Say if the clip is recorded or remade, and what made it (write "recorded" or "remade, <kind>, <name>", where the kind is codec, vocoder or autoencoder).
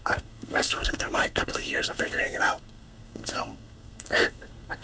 remade, codec, SNAC